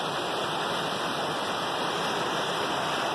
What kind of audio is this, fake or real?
real